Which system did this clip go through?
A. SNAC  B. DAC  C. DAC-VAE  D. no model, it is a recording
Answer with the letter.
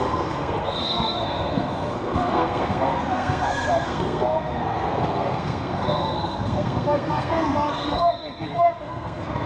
A